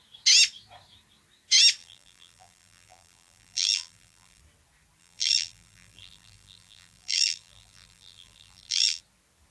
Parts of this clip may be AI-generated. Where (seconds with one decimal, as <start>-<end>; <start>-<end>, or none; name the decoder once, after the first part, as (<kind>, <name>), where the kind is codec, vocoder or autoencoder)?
1.8-4.4 (vocoder, BigVGAN v2); 5.0-9.0